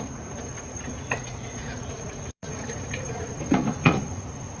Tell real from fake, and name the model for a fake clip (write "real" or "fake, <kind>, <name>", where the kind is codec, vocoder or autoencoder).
fake, vocoder, Vocos